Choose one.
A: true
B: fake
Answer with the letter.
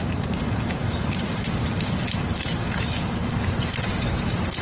B